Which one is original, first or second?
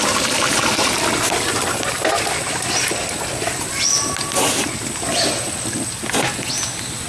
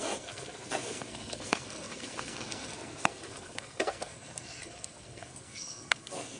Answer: first